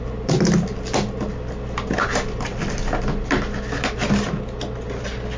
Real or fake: real